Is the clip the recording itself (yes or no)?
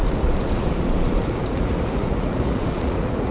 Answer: no